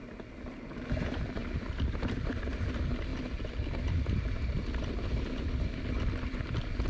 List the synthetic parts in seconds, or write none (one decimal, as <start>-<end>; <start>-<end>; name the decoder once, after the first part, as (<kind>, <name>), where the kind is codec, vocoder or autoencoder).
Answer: 0.0-3.1 (vocoder, BigVGAN v2); 4.0-6.9